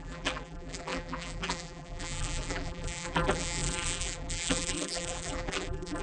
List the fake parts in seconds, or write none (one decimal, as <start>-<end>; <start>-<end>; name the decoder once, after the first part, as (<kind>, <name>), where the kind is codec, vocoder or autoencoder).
0.0-6.0 (vocoder, BigVGAN v2)